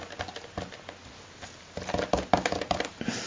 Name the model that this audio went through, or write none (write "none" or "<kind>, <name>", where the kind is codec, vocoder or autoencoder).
none